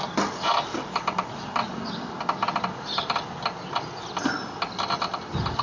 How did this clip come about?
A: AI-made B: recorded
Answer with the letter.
B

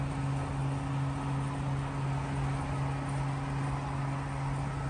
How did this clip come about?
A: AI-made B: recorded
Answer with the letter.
B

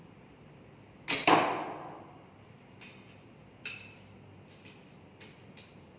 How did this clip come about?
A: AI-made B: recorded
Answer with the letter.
B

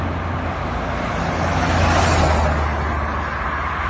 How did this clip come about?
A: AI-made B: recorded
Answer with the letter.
B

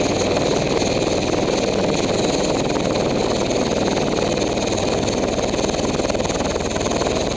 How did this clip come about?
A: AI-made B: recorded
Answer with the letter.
B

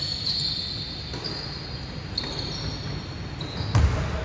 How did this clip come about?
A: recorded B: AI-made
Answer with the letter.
A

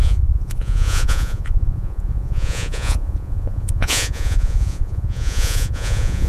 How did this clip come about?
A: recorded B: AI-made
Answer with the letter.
B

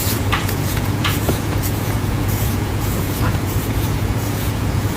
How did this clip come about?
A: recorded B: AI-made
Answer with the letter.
B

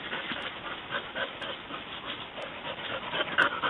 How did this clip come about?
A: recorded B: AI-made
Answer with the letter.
A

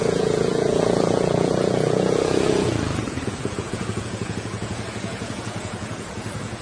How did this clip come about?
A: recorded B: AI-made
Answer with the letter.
B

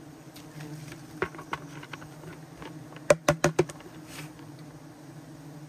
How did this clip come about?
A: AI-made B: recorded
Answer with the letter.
B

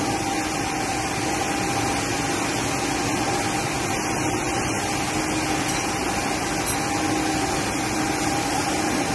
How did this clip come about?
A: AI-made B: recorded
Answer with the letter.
B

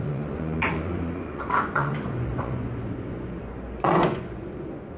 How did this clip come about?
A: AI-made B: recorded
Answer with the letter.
A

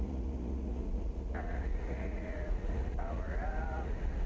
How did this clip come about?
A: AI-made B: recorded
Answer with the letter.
A